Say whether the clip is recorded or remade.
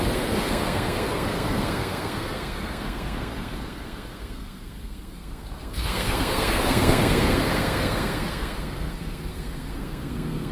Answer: remade